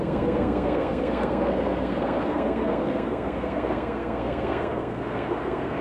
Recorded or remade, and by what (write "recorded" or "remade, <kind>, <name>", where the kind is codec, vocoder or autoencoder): remade, codec, SNAC